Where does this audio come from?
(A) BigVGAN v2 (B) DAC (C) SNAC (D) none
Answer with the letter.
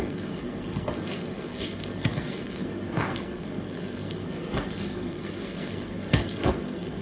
C